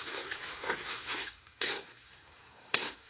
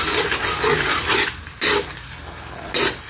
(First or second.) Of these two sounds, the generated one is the first